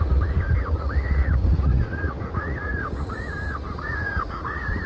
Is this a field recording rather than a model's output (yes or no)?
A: no